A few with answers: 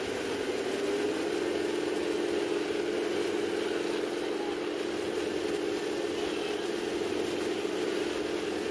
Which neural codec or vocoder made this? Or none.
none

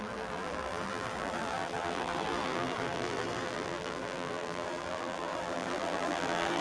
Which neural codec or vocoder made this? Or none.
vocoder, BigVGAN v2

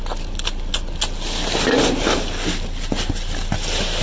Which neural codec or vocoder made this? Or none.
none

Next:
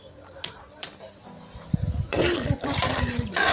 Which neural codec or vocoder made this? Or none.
vocoder, BigVGAN v2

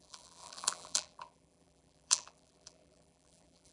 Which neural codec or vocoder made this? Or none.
vocoder, BigVGAN v2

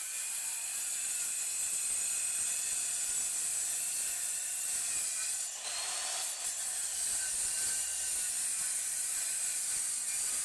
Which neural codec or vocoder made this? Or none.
vocoder, BigVGAN v2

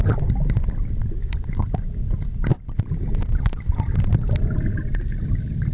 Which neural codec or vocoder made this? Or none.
none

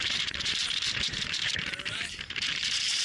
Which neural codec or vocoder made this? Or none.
vocoder, BigVGAN v2